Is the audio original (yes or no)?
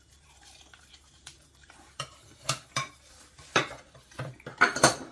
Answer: no